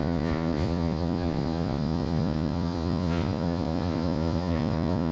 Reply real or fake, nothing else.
fake